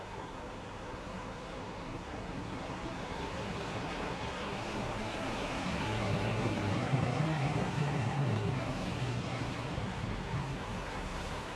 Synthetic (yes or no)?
yes